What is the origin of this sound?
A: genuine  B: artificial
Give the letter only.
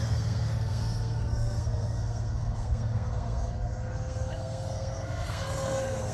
B